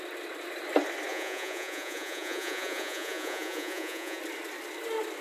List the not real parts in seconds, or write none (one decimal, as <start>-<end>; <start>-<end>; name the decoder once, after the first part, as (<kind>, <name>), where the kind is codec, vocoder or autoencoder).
1.1-4.2 (vocoder, Vocos)